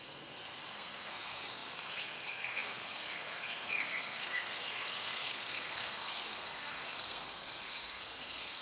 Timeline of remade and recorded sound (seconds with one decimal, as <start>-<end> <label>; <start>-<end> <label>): 0.0-8.6 remade

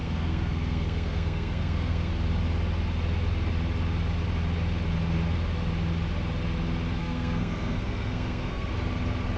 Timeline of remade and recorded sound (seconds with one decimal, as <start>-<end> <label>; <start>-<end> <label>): 0.0-2.1 remade; 2.1-7.0 recorded; 7.0-8.7 remade; 8.7-9.4 recorded